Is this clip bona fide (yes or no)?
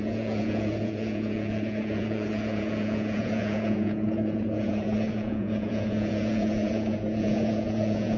no